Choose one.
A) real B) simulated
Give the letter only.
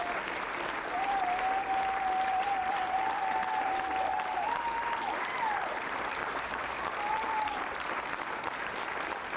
B